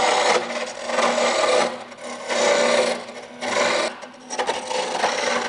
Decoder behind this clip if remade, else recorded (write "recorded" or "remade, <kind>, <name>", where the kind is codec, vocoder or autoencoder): recorded